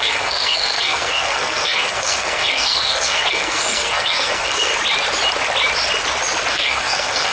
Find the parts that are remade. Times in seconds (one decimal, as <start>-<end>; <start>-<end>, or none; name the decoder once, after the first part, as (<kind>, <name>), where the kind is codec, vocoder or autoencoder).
0.0-4.7 (codec, SNAC); 6.5-7.3